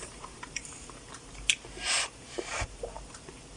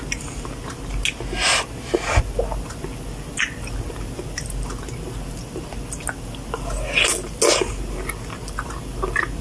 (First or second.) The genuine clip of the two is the second